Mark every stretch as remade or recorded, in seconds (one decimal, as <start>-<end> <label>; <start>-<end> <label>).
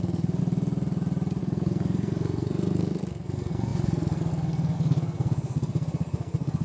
0.0-0.4 remade; 0.4-1.4 recorded; 1.4-6.6 remade